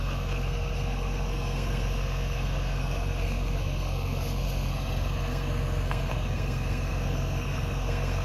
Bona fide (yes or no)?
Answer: no